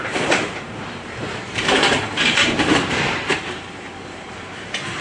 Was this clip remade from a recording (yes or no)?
yes